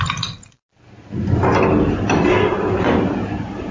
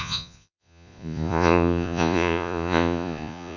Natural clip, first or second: first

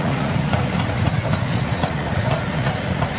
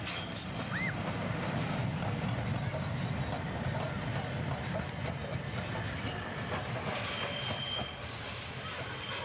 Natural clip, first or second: second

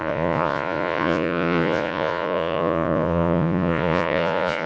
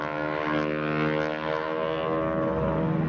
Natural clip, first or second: second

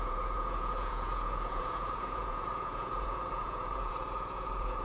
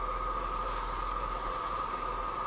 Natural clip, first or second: second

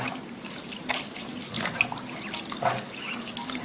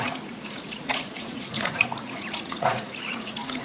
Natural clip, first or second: first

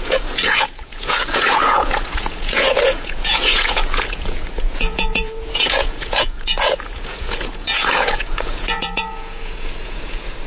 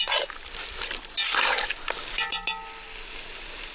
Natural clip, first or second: second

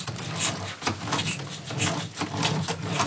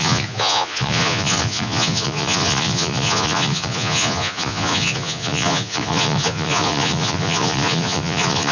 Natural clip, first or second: first